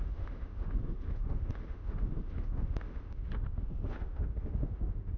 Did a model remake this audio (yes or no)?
yes